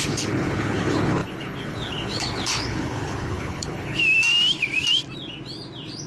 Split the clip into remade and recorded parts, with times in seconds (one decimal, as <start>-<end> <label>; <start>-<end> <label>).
0.0-4.0 remade; 4.0-6.1 recorded